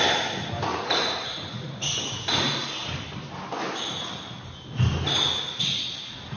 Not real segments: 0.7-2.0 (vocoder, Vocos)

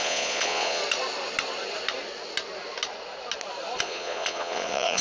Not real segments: 0.0-0.8 (vocoder, Vocos); 3.8-5.0

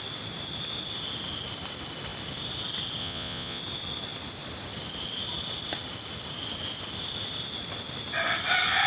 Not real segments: 3.0-3.6 (vocoder, Vocos)

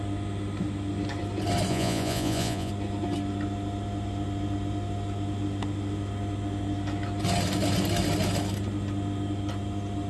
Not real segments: 1.7-2.7 (vocoder, Vocos)

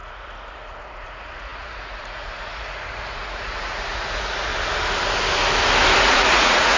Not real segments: 0.0-4.5 (vocoder, Vocos); 6.0-6.8

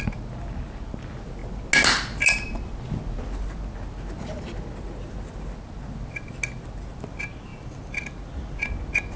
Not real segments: none

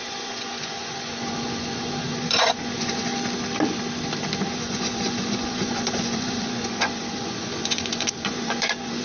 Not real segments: 0.0-3.1 (vocoder, Vocos); 4.5-9.0